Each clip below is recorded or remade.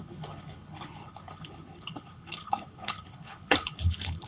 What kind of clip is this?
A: remade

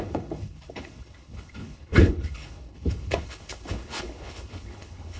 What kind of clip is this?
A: remade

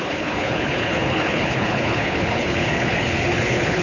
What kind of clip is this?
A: remade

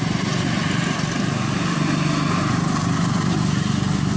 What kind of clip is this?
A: recorded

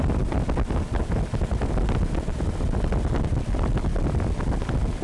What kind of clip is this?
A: recorded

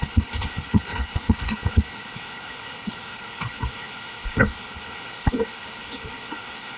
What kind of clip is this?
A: remade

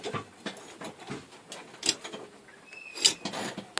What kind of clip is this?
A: recorded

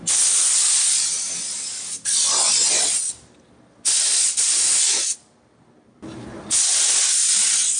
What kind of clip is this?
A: recorded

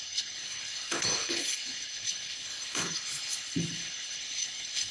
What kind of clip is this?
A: remade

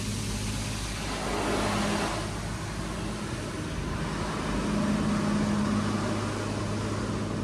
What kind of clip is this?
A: recorded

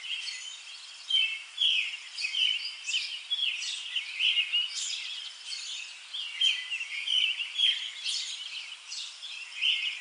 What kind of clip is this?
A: recorded